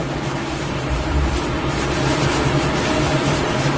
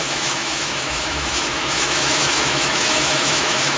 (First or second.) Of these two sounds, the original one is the first